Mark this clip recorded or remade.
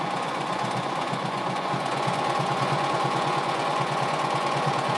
remade